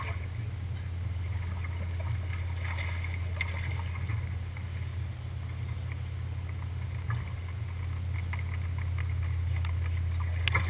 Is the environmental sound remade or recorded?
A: recorded